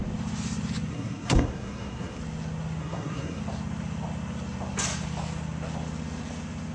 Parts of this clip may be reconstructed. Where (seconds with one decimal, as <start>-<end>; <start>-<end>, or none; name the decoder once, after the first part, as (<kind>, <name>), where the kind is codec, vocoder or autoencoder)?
0.9-2.2 (codec, SNAC); 2.8-3.4